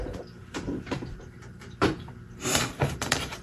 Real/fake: fake